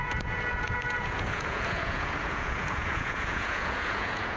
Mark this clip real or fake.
fake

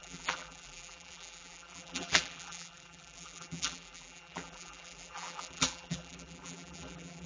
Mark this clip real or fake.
fake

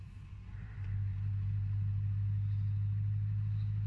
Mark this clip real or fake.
real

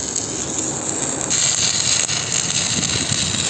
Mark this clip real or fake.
real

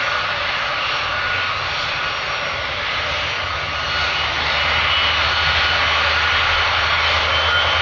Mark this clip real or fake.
real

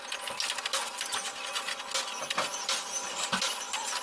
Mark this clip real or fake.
real